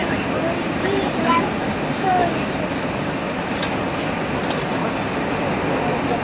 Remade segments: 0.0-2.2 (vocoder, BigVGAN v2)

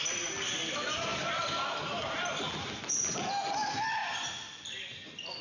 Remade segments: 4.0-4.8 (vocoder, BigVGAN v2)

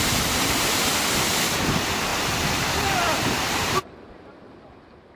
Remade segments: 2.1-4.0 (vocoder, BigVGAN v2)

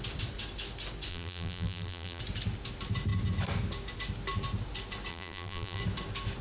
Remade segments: 1.1-2.2 (vocoder, BigVGAN v2); 5.1-5.8